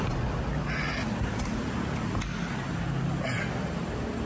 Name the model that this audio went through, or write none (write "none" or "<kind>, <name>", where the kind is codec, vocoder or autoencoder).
none